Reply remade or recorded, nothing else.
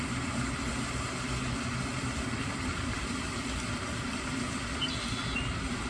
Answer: recorded